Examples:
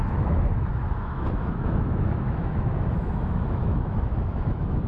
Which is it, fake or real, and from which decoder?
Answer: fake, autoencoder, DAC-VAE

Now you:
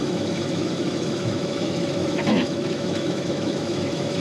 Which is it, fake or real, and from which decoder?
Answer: fake, autoencoder, DAC-VAE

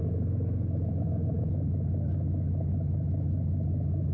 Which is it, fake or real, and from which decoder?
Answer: fake, autoencoder, DAC-VAE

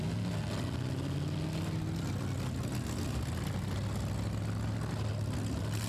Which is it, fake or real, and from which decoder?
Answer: real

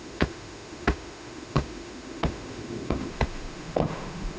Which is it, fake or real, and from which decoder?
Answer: fake, autoencoder, DAC-VAE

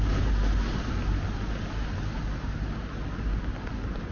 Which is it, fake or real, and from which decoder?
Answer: real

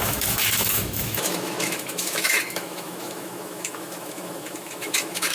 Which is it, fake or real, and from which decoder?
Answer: fake, autoencoder, DAC-VAE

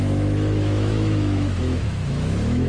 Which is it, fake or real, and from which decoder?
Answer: fake, autoencoder, DAC-VAE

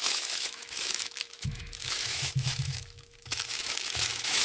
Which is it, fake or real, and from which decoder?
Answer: fake, autoencoder, DAC-VAE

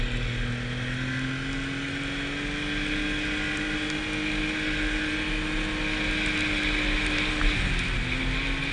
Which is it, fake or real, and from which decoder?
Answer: real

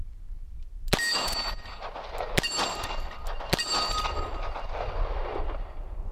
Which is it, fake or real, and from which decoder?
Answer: real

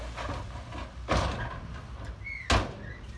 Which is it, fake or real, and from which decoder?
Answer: real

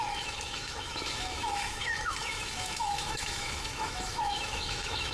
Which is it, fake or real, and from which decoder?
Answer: fake, autoencoder, DAC-VAE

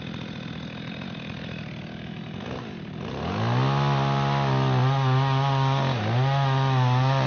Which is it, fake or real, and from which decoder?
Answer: real